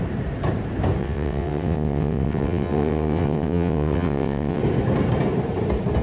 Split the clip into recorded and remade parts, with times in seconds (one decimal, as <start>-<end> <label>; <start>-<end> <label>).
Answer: 0.0-1.0 recorded; 1.0-4.6 remade; 4.6-6.0 recorded